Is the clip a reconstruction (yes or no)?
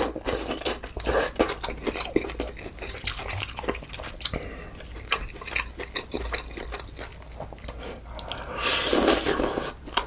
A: no